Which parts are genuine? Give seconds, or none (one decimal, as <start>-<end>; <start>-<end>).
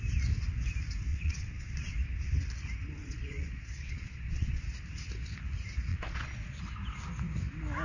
0.0-1.1; 1.9-3.0; 4.6-5.9; 6.6-7.8